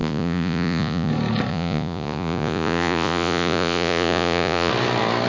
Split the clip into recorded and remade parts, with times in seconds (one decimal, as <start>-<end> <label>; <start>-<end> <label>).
0.0-1.1 remade; 1.1-1.5 recorded; 1.5-4.7 remade; 4.7-5.3 recorded